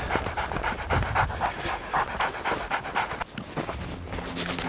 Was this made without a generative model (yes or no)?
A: yes